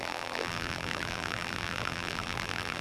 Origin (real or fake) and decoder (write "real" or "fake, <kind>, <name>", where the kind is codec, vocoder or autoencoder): fake, vocoder, BigVGAN v2